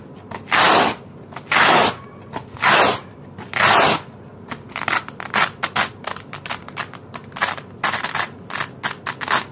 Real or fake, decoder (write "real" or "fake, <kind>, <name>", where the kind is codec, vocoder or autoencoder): real